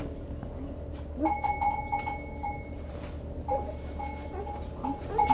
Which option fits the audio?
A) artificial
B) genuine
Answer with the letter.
B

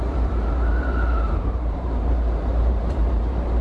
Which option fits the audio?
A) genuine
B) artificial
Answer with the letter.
B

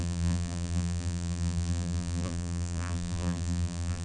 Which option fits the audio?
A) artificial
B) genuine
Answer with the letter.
A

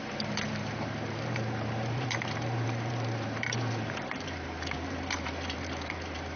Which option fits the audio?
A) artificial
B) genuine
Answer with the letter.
A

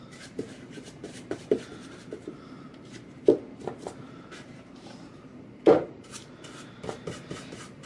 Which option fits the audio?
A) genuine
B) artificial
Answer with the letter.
B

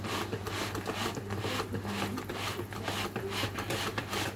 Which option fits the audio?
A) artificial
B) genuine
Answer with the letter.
B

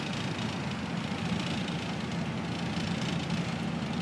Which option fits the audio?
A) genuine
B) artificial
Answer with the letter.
A